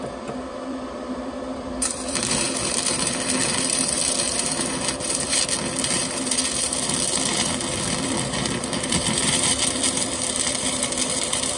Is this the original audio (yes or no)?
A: no